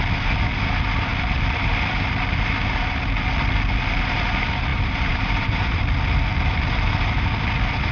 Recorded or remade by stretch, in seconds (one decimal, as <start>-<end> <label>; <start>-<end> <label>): 0.0-4.7 recorded; 4.7-5.8 remade; 5.8-7.9 recorded